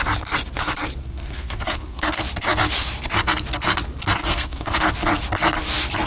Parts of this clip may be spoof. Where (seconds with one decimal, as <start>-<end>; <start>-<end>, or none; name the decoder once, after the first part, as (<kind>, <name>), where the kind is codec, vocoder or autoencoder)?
1.0-2.2 (codec, SNAC); 4.3-4.9